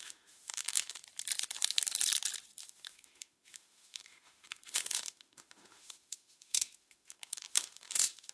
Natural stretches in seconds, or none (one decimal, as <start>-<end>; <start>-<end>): 1.0-2.6

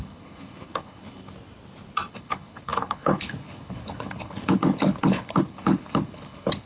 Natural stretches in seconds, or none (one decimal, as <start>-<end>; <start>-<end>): 1.2-2.1

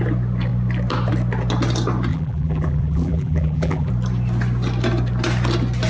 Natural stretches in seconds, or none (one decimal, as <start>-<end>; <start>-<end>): 0.0-2.1; 3.9-5.9

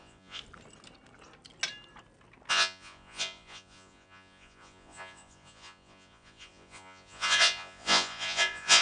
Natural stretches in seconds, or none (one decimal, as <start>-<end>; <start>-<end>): 0.4-2.5

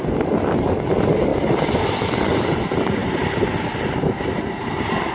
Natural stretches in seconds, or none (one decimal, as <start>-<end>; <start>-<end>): 0.0-3.0

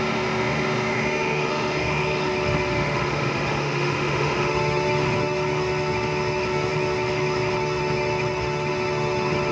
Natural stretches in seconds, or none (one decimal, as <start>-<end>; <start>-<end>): none